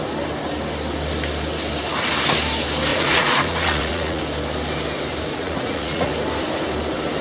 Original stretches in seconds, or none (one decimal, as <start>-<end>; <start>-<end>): 0.0-2.9; 4.2-5.3; 6.1-7.2